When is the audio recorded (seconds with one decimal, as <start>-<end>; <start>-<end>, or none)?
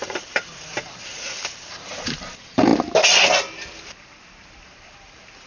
2.7-4.6